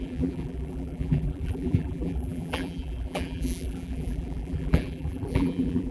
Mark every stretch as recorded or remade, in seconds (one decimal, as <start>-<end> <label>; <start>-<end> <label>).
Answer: 0.0-5.9 remade